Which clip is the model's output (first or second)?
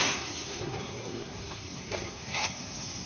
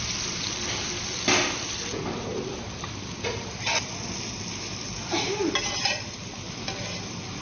first